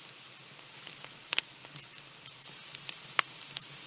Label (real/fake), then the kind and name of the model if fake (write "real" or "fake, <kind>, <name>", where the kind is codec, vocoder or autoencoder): real